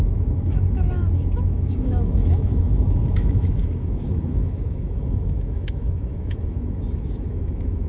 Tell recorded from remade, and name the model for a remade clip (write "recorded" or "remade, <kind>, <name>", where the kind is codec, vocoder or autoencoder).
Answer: remade, autoencoder, DAC-VAE